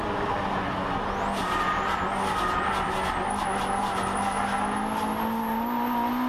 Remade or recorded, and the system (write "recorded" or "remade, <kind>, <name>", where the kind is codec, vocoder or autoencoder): recorded